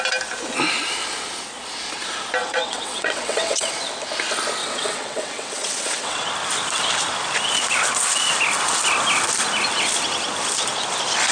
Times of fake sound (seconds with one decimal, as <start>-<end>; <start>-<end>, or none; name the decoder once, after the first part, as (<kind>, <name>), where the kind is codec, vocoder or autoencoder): 2.4-3.7 (vocoder, WaveNeXt); 4.6-6.3